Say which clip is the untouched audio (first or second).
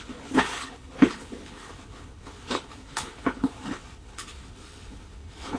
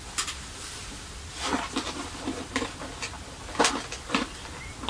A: second